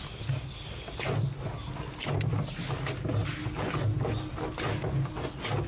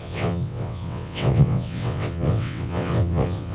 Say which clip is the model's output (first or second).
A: second